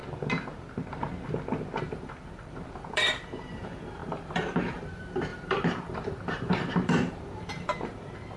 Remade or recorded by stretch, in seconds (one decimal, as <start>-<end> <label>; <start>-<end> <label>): 0.0-1.8 recorded; 1.8-8.4 remade